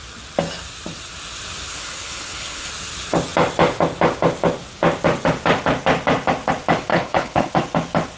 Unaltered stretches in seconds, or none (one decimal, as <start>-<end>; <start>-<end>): 0.0-1.7; 2.7-6.9; 7.5-8.2